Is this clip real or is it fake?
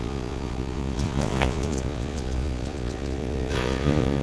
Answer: fake